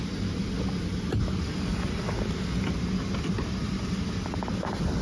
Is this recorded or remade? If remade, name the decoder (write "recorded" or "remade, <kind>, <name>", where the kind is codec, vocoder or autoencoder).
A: recorded